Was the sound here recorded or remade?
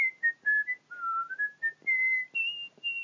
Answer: recorded